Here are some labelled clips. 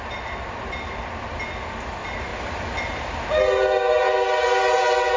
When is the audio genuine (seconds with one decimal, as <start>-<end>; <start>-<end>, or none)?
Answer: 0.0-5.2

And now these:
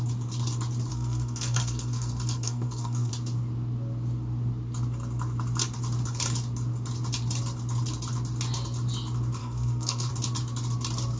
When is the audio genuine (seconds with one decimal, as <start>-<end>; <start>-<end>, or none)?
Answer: 0.0-0.9; 3.1-9.4; 10.1-11.2

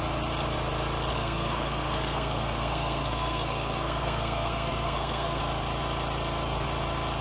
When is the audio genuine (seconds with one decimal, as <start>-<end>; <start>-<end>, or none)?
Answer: 0.0-1.1; 5.4-7.2

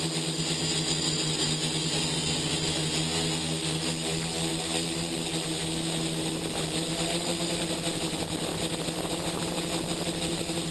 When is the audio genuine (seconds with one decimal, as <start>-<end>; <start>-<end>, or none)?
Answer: 0.0-10.7